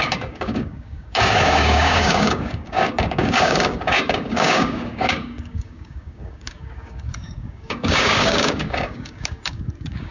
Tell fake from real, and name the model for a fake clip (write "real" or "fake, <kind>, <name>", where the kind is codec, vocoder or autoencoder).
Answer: fake, codec, DAC